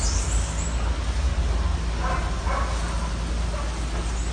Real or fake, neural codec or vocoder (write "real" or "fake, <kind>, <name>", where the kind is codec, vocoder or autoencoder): real